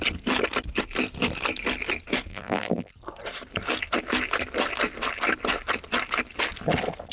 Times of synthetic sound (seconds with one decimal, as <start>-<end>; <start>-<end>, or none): 2.3-2.9